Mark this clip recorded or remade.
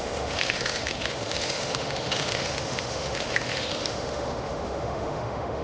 remade